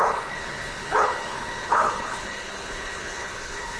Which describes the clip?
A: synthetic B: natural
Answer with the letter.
A